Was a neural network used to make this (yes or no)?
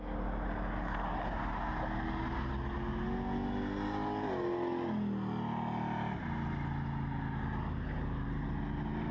no